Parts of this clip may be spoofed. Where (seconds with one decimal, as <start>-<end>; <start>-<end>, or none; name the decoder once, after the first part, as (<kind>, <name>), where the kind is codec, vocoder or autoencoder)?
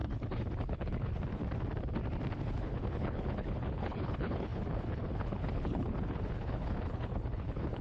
0.0-1.4 (codec, HILCodec); 2.4-7.8